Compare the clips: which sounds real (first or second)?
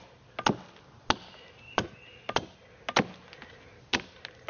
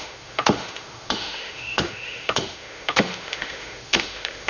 first